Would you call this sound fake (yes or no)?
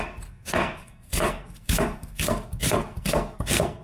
yes